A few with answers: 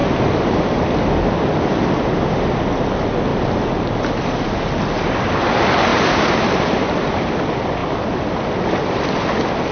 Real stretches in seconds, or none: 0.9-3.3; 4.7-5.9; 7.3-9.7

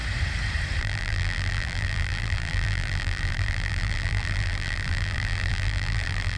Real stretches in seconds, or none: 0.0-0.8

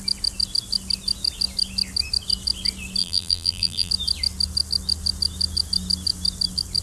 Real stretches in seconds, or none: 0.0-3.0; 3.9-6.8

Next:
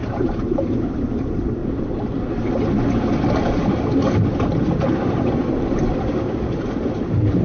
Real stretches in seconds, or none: 1.6-6.0